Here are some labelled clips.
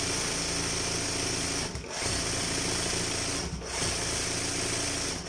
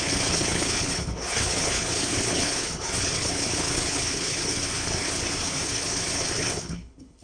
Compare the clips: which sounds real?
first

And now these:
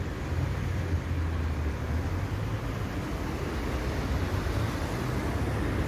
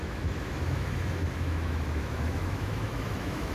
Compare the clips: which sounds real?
first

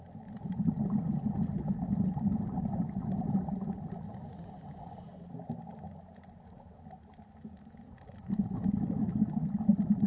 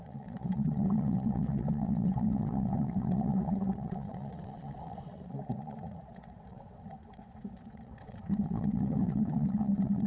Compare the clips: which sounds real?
first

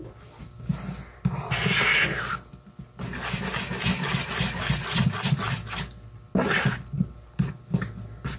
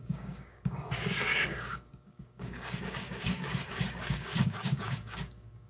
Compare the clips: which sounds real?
first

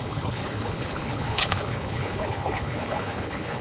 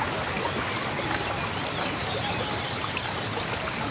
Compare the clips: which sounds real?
second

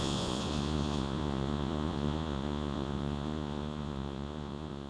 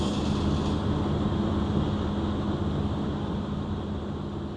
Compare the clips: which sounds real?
second